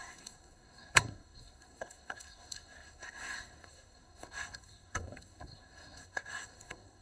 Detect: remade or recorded remade